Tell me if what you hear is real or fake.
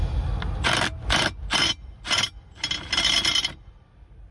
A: real